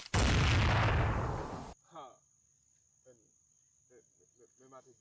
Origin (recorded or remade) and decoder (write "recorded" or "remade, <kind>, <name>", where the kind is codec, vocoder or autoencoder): recorded